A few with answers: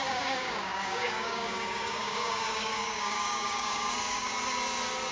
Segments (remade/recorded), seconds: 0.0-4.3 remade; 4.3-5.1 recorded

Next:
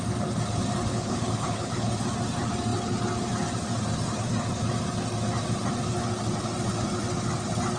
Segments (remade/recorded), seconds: 0.0-0.9 recorded; 0.9-1.9 remade; 1.9-7.8 recorded

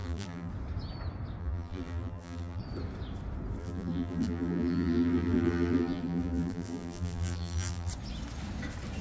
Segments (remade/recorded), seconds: 0.0-0.5 remade; 0.5-1.4 recorded; 1.4-2.6 remade; 2.6-3.6 recorded; 3.6-7.9 remade; 7.9-9.0 recorded

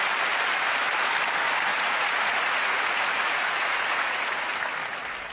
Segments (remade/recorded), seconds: 0.0-1.7 recorded; 1.7-4.5 remade; 4.5-5.3 recorded

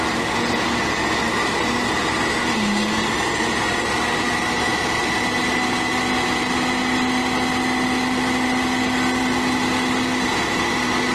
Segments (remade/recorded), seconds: 0.0-11.1 recorded

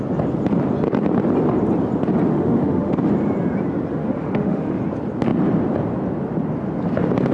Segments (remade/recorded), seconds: 0.0-2.3 recorded; 2.3-3.1 remade; 3.1-3.9 recorded; 3.9-4.8 remade; 4.8-7.3 recorded

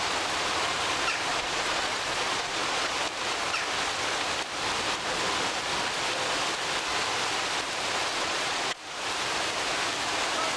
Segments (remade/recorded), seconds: 0.0-1.3 recorded; 1.3-2.9 remade; 2.9-8.1 recorded; 8.1-8.8 remade; 8.8-10.6 recorded

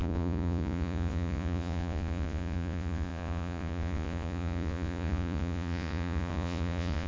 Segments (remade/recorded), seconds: 0.0-7.1 remade